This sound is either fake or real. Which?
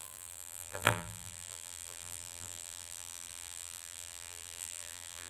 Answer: fake